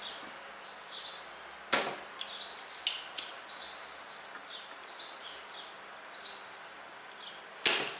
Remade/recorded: recorded